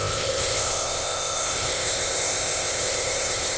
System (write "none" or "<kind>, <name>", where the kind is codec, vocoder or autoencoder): codec, ZipCodec